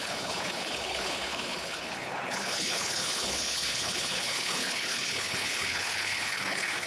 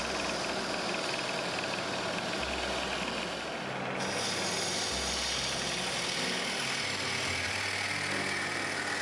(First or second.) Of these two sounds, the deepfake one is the first